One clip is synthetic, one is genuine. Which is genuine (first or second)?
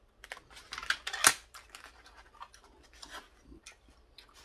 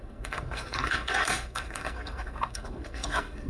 first